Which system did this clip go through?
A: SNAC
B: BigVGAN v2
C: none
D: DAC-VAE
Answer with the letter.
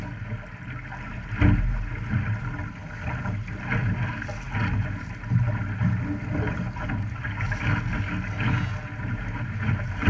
C